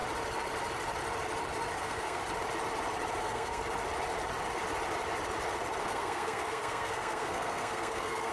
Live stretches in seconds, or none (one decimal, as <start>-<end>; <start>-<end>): 0.0-1.8; 2.2-3.2; 3.6-5.8